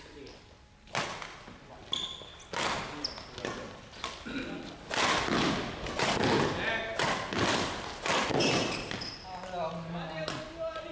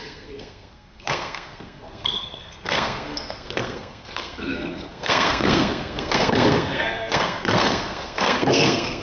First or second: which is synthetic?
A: second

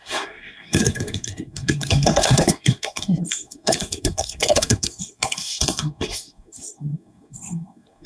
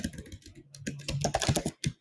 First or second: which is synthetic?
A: first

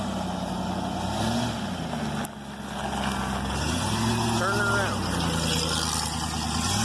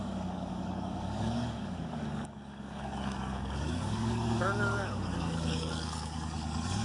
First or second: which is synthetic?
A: second